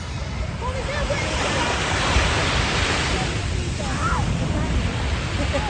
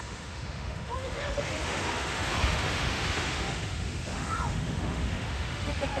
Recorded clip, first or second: first